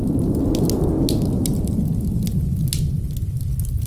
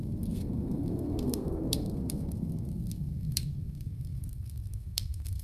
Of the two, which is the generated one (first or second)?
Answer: second